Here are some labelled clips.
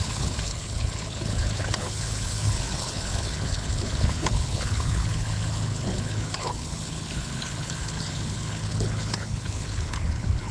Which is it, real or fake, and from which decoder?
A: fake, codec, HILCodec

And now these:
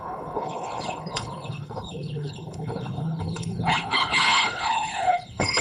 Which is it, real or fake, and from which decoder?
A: fake, codec, HILCodec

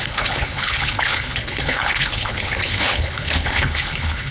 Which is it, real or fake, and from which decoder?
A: fake, codec, HILCodec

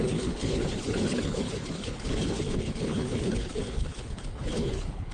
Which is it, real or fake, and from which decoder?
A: fake, codec, HILCodec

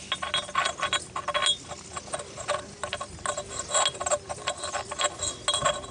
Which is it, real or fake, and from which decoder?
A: real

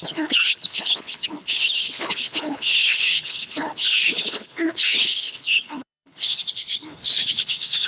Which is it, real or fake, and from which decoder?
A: fake, codec, HILCodec